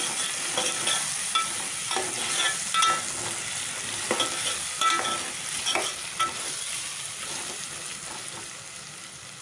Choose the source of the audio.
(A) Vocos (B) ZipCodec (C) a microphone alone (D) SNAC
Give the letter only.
C